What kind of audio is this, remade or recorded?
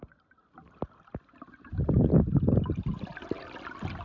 recorded